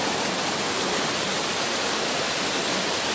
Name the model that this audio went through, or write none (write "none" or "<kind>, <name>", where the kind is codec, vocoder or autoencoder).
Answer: none